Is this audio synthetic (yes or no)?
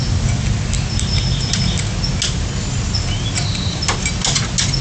no